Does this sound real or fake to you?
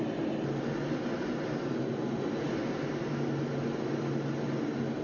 real